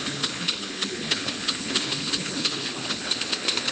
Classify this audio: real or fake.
fake